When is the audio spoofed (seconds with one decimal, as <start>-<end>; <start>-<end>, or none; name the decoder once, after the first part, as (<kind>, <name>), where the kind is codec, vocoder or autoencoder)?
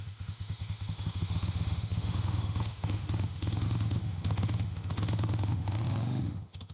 0.0-6.7 (autoencoder, DAC-VAE)